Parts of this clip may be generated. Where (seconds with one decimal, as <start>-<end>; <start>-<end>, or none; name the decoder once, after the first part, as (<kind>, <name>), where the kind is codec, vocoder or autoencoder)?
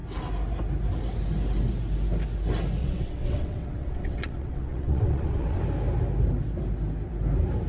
2.8-5.6 (vocoder, WaveNeXt)